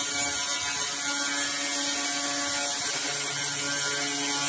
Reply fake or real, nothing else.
real